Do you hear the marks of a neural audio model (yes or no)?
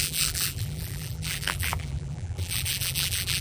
yes